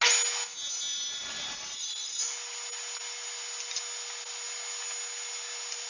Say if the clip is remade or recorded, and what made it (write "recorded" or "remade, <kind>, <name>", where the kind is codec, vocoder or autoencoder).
recorded